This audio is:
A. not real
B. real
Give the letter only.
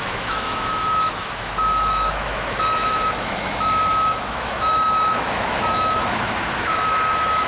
A